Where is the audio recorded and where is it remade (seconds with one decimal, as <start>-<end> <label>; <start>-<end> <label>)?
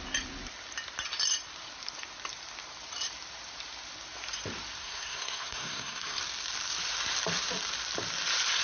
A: 0.0-4.8 recorded; 4.8-6.2 remade; 6.2-8.6 recorded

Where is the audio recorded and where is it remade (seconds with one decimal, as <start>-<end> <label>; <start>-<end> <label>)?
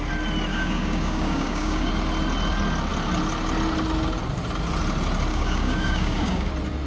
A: 0.0-0.5 recorded; 0.5-1.9 remade; 1.9-5.3 recorded; 5.3-6.5 remade; 6.5-6.9 recorded